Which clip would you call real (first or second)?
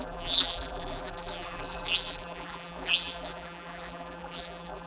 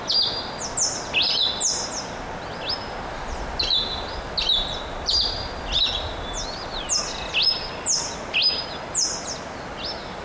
second